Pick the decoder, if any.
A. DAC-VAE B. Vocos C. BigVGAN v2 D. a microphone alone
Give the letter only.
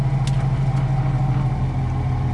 D